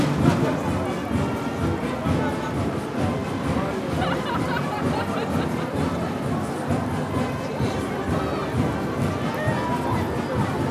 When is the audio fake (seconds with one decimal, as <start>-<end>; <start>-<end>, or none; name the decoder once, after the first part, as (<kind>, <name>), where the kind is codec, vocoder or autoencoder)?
none

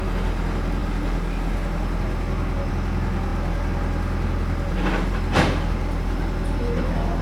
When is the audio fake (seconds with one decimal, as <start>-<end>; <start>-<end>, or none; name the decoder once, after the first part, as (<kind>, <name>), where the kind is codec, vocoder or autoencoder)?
none

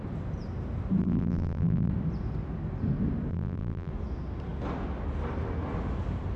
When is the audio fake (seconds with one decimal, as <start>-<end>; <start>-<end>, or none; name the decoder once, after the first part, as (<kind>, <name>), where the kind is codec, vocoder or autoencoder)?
1.0-1.9 (vocoder, BigVGAN v2); 3.3-3.9

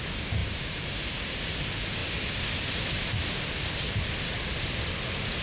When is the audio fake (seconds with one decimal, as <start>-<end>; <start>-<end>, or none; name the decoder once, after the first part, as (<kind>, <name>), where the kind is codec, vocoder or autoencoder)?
0.4-1.4 (vocoder, BigVGAN v2)